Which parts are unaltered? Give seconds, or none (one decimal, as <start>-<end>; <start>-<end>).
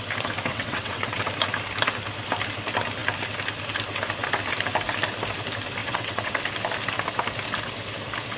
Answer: 0.0-0.5; 1.3-5.8; 6.4-8.4